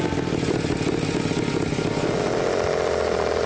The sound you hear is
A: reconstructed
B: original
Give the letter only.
B